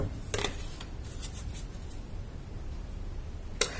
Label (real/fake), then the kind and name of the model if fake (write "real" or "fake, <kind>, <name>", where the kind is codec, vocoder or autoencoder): real